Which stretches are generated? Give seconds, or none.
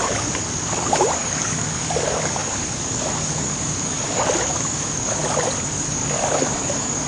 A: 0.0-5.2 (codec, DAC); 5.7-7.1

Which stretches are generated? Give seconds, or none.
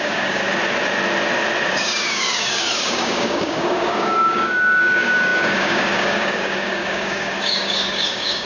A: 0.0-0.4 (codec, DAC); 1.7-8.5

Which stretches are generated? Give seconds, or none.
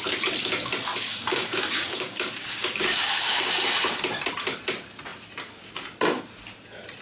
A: 0.9-3.5 (codec, DAC)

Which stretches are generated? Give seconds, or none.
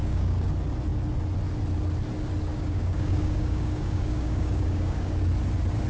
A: 0.0-0.5 (codec, DAC); 2.5-5.2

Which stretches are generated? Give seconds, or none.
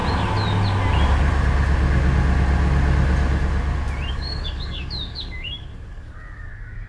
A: 4.1-6.9 (codec, DAC)